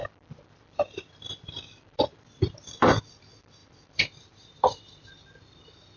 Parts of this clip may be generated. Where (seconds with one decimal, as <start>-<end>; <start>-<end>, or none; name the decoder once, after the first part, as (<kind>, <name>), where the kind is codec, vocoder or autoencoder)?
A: 0.0-3.0 (vocoder, BigVGAN v2); 3.6-5.1